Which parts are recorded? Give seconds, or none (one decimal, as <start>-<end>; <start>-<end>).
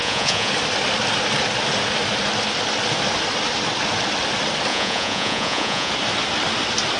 0.5-4.7; 5.9-7.0